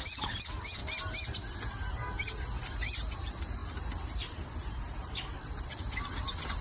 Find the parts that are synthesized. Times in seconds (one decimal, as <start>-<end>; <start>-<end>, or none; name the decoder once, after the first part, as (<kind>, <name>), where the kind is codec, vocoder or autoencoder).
none